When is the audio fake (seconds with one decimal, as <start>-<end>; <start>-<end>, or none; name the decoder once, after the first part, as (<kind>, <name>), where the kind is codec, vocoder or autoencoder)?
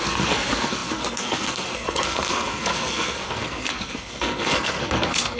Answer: 0.0-5.4 (codec, SNAC)